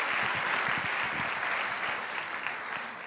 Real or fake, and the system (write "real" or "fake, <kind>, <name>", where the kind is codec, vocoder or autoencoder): real